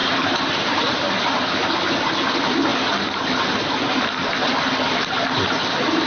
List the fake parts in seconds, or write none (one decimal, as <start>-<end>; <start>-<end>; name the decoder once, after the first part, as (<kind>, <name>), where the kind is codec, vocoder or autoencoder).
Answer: 0.0-0.8 (vocoder, BigVGAN v2)